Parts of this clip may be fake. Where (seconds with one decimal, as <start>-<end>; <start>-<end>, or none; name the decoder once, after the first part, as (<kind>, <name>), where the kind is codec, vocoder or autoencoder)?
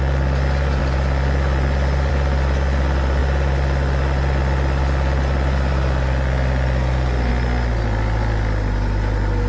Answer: 3.2-7.3 (vocoder, BigVGAN v2)